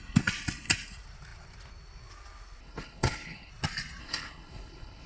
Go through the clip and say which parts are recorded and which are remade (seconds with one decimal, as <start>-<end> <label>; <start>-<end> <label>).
0.0-2.6 recorded; 2.6-3.5 remade; 3.5-4.0 recorded; 4.0-5.1 remade